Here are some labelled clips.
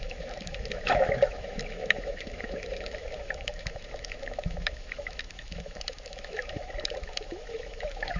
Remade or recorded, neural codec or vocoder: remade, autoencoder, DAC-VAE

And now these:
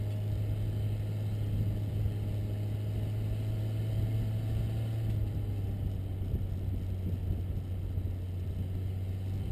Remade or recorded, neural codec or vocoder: recorded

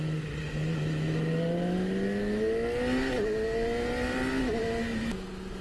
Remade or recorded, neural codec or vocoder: recorded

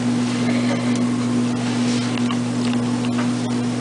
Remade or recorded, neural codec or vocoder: recorded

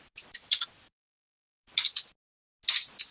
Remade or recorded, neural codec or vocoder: recorded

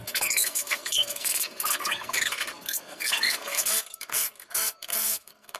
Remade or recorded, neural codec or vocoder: remade, codec, SNAC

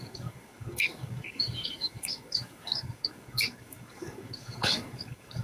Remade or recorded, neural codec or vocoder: remade, codec, DAC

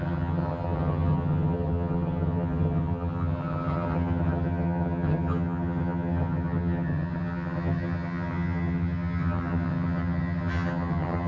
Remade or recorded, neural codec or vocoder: remade, vocoder, HiFi-GAN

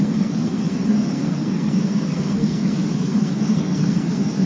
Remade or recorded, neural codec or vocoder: remade, codec, SNAC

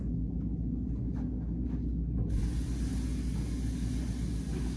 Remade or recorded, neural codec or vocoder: recorded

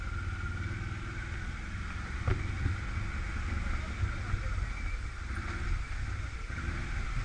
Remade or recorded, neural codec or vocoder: recorded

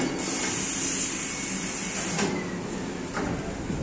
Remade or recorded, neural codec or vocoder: recorded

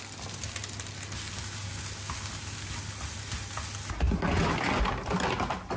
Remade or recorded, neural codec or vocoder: recorded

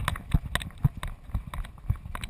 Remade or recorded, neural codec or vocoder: recorded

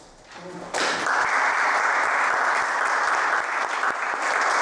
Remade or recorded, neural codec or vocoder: recorded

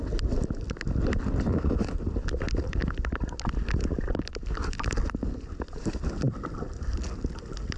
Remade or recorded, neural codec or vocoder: recorded